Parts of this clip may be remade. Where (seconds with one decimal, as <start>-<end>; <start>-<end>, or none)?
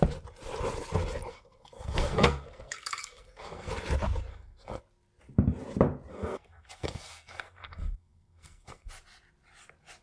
1.3-3.7; 4.3-4.8; 6.1-8.9